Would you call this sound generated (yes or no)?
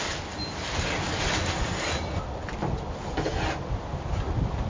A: no